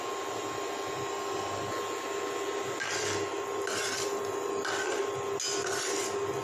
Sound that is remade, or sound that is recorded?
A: recorded